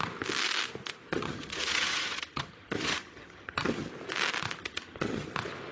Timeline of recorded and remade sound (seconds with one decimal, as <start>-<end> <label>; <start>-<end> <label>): 0.0-1.1 recorded; 1.1-3.9 remade; 3.9-4.6 recorded; 4.6-5.3 remade; 5.3-5.7 recorded